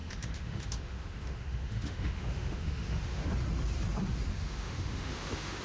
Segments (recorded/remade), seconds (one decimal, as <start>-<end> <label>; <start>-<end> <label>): 0.0-3.3 remade; 3.3-4.3 recorded; 4.3-5.6 remade